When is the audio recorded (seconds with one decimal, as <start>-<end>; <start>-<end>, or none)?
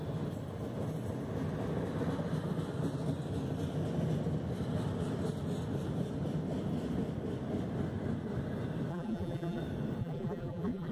0.0-8.9; 9.6-10.0